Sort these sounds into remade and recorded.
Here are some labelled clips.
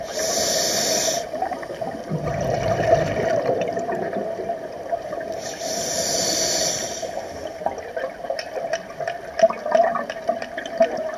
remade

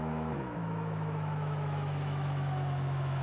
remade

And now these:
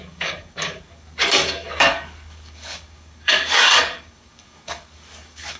remade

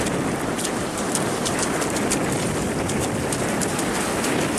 recorded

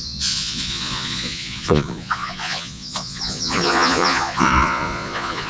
remade